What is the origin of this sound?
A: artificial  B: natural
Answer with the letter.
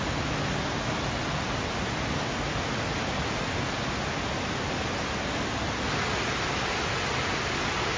B